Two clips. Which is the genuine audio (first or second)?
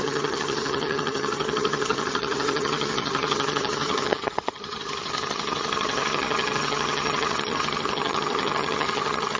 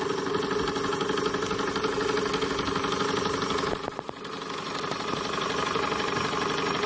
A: second